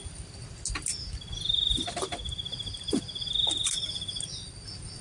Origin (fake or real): real